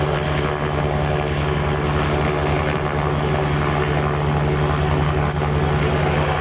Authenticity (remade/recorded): recorded